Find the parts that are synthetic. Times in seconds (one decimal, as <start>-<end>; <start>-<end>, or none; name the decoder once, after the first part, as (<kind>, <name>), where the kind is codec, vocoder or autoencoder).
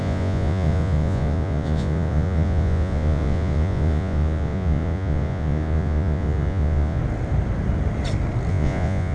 0.0-7.0 (vocoder, Vocos); 8.5-9.1